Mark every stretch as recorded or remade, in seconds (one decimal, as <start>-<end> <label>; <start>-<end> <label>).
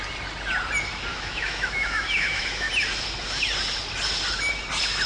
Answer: 0.0-1.1 recorded; 1.1-2.7 remade; 2.7-5.1 recorded